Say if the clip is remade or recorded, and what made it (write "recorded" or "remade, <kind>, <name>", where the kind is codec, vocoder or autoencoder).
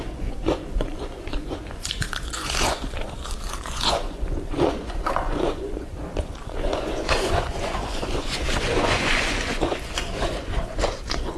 remade, vocoder, Vocos